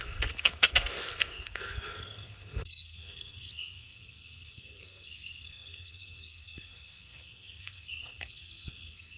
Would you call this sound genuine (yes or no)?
no